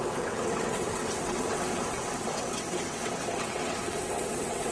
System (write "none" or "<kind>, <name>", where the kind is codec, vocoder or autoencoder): vocoder, WaveNeXt